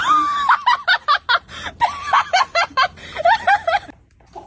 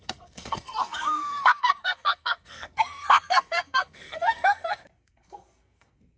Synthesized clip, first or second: second